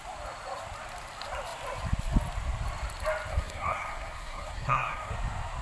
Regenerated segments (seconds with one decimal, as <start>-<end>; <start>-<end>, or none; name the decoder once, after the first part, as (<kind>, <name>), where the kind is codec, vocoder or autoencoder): 3.3-5.1 (codec, SNAC)